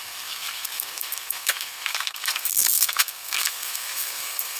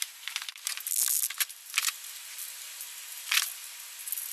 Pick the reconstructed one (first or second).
first